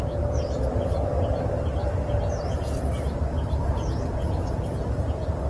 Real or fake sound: real